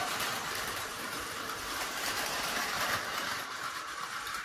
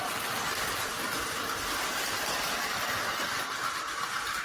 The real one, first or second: second